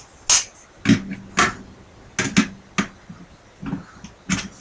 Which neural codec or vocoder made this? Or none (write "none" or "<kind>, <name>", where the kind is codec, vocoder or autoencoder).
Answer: none